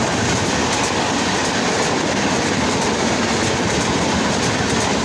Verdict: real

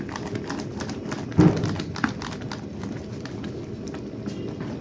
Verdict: real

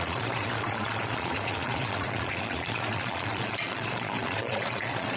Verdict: fake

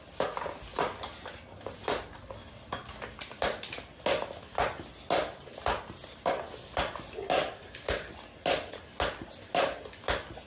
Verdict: real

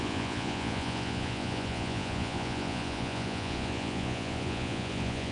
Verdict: fake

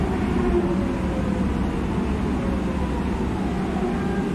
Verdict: real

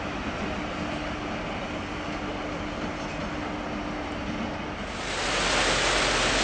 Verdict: real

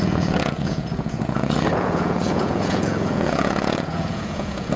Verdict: fake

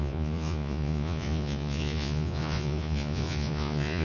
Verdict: fake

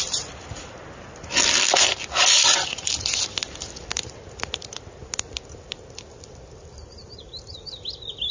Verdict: real